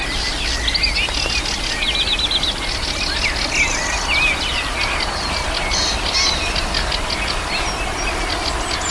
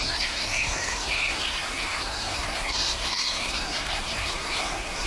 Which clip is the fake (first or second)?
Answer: second